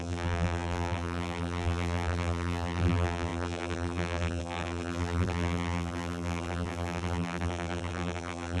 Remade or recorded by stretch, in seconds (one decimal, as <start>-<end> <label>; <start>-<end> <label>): 0.0-8.6 remade